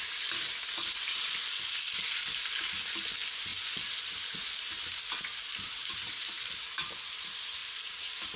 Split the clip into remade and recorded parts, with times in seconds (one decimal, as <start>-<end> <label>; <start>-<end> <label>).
0.0-7.6 recorded; 7.6-8.4 remade